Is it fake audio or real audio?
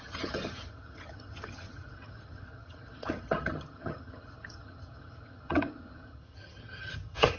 fake